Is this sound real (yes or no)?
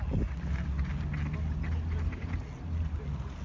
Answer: yes